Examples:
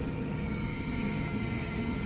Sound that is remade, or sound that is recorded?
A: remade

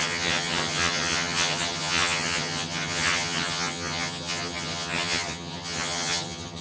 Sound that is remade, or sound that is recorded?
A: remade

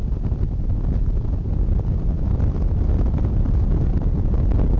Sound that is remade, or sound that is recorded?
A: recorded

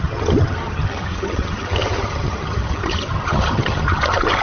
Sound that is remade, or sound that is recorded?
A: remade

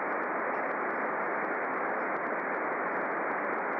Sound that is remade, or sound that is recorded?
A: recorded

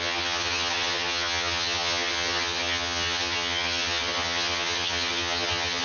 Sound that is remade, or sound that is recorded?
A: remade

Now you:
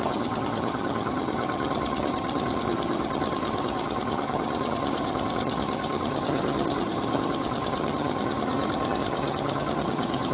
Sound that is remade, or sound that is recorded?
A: remade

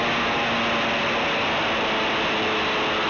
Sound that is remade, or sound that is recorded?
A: recorded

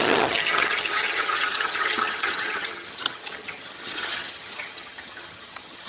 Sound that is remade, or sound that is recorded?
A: remade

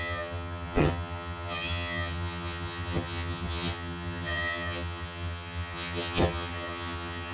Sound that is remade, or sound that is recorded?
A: remade